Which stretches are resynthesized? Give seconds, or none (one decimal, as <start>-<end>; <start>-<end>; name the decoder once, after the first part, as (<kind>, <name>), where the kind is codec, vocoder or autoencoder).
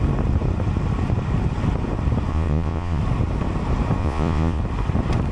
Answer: 2.3-3.0 (vocoder, Vocos); 4.0-4.6